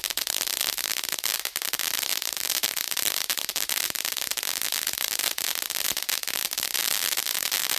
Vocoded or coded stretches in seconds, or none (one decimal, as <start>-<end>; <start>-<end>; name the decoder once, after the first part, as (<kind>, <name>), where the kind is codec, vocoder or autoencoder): none